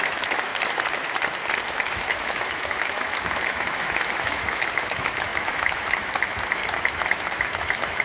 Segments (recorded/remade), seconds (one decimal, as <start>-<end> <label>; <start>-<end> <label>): 0.0-0.5 remade; 0.5-1.6 recorded; 1.6-6.6 remade; 6.6-7.1 recorded; 7.1-8.0 remade